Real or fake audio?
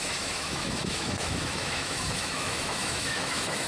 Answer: fake